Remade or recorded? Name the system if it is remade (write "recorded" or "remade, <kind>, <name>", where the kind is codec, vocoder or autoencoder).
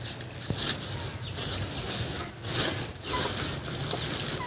recorded